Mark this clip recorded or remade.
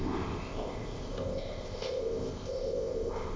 remade